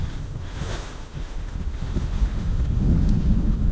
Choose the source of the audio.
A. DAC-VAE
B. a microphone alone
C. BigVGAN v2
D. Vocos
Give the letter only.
A